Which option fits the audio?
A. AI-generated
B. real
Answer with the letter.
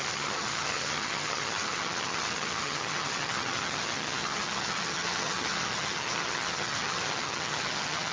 A